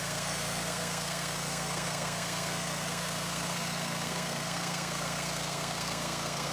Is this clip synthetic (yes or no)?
yes